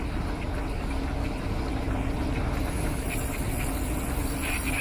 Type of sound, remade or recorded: recorded